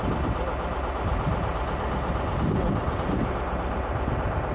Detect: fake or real real